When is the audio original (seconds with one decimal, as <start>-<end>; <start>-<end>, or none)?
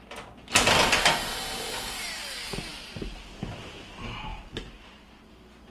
0.0-4.3; 5.3-5.7